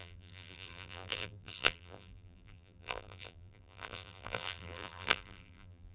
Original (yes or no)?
no